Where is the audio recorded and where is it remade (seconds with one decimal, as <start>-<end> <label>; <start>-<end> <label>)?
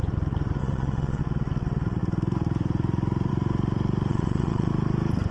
0.0-0.6 recorded; 0.6-1.2 remade; 1.2-4.1 recorded; 4.1-4.7 remade; 4.7-5.3 recorded